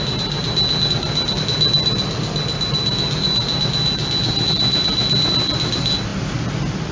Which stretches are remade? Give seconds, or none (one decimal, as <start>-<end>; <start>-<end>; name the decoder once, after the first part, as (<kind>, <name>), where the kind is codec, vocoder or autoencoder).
none